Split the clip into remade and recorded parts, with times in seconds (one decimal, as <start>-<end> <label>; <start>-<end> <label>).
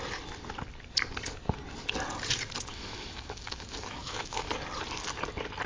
0.0-2.7 recorded; 2.7-4.5 remade; 4.5-5.7 recorded